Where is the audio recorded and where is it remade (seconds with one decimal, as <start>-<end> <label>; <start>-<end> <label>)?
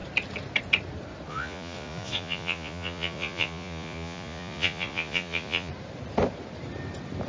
0.0-1.3 recorded; 1.3-5.7 remade; 5.7-7.3 recorded